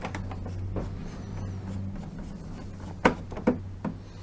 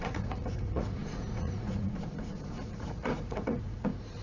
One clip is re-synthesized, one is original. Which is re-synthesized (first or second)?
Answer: second